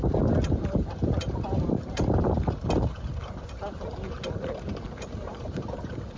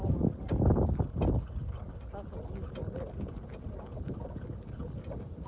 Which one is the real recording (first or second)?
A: second